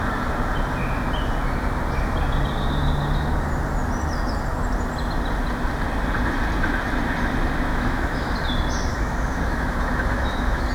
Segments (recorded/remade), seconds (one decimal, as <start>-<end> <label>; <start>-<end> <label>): 0.0-7.7 recorded; 7.7-8.3 remade; 8.3-8.9 recorded; 8.9-10.7 remade